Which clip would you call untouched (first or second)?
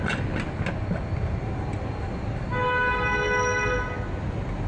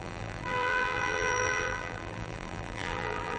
first